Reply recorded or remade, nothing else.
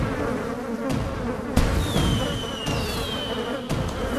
recorded